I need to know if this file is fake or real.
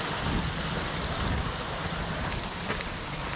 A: real